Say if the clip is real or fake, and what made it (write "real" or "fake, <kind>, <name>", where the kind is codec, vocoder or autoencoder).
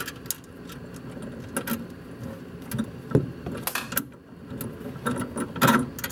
real